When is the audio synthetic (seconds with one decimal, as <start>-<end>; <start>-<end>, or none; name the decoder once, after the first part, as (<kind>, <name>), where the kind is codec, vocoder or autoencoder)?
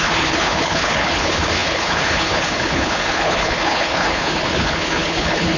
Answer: 0.0-5.6 (codec, HILCodec)